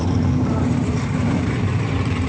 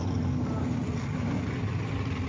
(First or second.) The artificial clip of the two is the first